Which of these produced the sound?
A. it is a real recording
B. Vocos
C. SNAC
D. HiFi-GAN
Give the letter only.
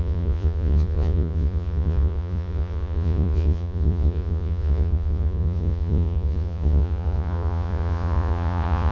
B